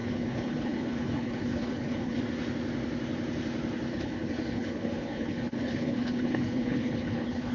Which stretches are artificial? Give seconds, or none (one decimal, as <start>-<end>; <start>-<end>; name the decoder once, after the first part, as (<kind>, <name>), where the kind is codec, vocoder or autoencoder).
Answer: 0.0-2.2 (codec, HILCodec); 3.9-7.5